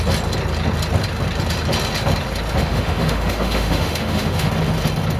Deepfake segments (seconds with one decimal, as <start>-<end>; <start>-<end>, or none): 2.6-4.5